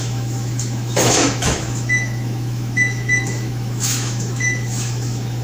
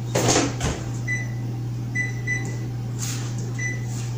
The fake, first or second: first